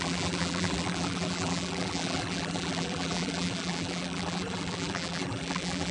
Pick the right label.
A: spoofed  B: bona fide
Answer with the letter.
A